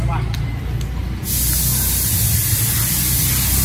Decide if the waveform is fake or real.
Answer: real